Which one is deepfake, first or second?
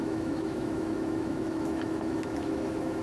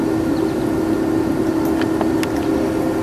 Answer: first